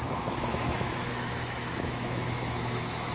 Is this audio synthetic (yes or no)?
yes